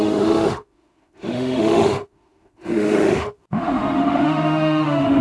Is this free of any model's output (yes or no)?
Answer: no